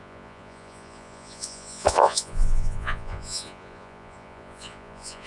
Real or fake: fake